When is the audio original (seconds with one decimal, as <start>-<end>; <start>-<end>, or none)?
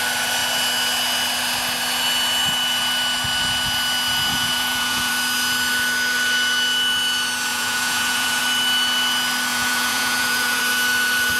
0.0-4.3; 5.1-7.5; 8.4-9.5; 10.6-11.4